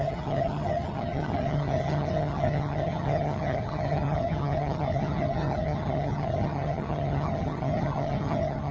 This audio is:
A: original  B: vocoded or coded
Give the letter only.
B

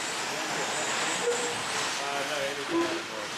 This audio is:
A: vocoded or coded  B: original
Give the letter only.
B